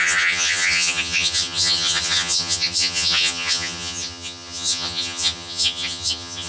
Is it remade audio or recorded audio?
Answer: remade